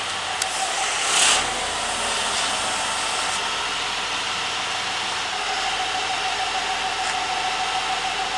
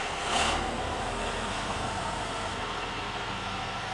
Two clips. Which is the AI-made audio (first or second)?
second